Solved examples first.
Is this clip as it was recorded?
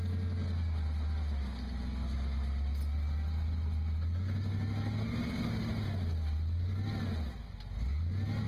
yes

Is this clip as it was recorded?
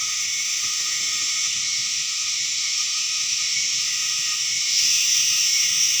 no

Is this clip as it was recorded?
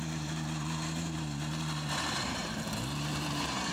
no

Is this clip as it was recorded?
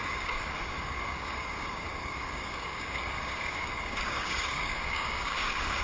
no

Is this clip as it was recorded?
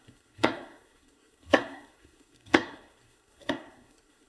no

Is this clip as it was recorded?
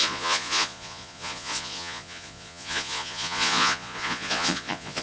no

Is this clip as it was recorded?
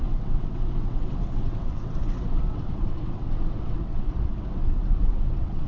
no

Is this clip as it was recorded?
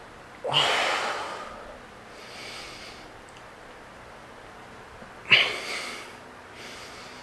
no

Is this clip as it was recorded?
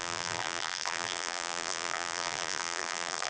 no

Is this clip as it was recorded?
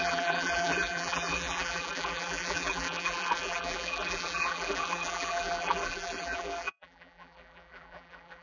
no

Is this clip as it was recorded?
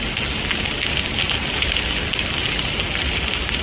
yes